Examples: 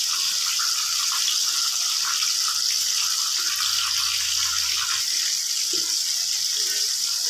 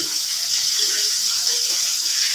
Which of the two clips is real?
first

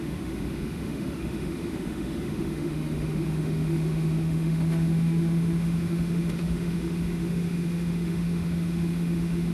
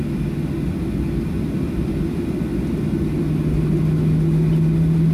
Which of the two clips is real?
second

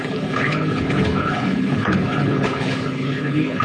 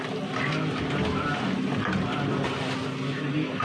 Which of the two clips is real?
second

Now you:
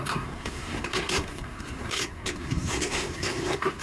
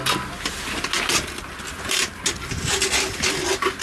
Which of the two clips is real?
second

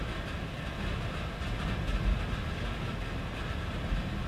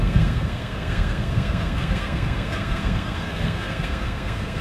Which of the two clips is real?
first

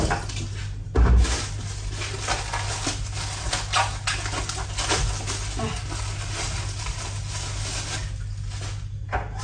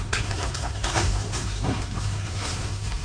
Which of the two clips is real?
first